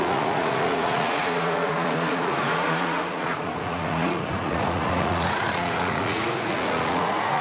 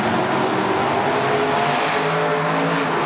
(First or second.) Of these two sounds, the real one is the second